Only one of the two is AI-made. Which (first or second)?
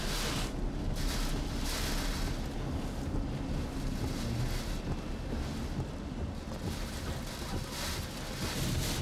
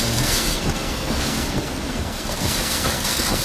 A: second